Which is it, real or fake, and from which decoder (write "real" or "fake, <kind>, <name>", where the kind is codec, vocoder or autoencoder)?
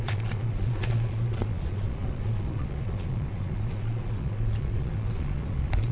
fake, vocoder, Vocos